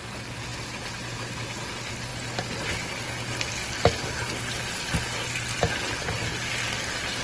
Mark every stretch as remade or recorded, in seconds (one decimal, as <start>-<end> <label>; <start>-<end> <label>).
0.0-7.2 recorded